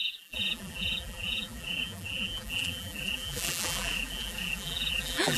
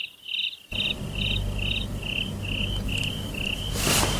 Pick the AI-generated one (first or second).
first